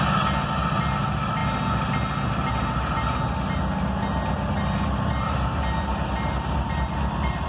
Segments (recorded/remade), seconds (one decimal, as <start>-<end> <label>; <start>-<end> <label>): 0.0-7.5 recorded